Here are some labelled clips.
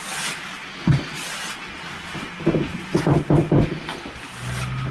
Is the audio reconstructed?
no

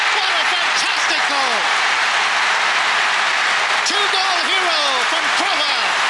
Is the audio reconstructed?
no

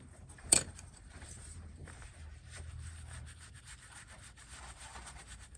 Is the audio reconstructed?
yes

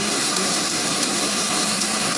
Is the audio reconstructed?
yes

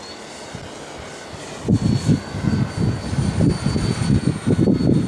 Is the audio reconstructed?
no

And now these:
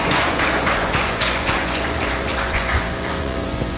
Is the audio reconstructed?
yes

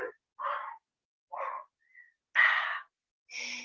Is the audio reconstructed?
no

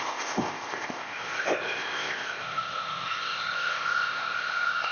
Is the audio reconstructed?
yes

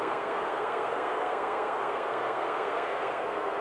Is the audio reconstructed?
yes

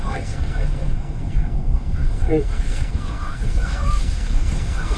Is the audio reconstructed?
yes